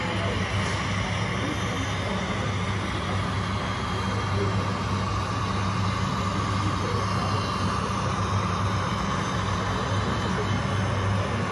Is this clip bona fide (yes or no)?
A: yes